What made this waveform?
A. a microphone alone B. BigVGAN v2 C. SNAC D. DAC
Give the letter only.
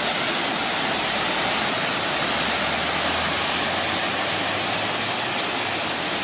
A